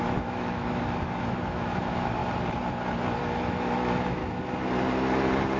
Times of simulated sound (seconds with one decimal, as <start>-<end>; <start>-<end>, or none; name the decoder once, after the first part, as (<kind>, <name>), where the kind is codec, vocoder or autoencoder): 0.0-2.2 (autoencoder, DAC-VAE); 3.2-4.2